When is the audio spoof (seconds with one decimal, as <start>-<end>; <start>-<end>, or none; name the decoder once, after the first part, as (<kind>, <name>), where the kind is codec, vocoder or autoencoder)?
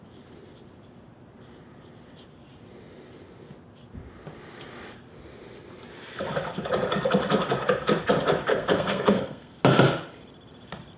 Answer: 8.5-9.5 (codec, SNAC)